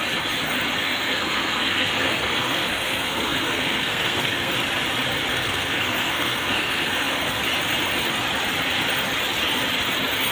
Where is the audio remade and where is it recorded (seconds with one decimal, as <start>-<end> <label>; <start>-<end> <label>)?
0.0-0.8 recorded; 0.8-4.5 remade; 4.5-5.3 recorded; 5.3-7.4 remade; 7.4-10.3 recorded